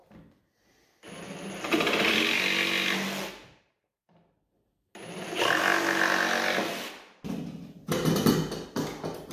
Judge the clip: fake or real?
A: real